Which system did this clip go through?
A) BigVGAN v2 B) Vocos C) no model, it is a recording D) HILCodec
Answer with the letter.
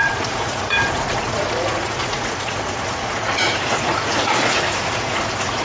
B